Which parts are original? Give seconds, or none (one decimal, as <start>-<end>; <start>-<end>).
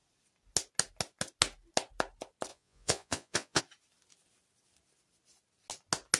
0.0-2.5; 3.6-6.2